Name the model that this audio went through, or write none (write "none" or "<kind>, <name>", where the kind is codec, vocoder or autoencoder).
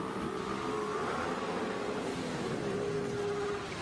none